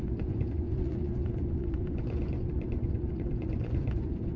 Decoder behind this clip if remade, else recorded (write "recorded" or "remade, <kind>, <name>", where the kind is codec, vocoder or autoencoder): remade, vocoder, Vocos